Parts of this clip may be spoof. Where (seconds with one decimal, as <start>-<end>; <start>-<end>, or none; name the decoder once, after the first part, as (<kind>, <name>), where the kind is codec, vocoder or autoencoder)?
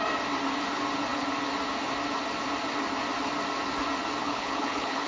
4.2-5.1 (codec, HILCodec)